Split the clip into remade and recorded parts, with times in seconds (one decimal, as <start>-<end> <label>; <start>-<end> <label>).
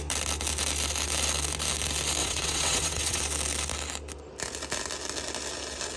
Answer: 0.0-2.2 recorded; 2.2-3.2 remade; 3.2-6.0 recorded